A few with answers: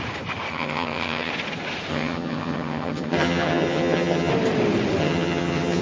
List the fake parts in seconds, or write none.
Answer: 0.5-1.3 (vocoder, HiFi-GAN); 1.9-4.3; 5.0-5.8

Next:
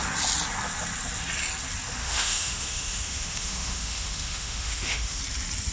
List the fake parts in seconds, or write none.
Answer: 2.0-5.2 (autoencoder, DAC-VAE)

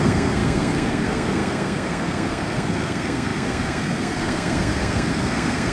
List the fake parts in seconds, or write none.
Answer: 0.0-5.7 (codec, SNAC)